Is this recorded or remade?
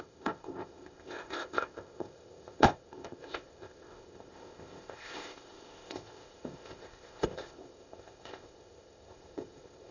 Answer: remade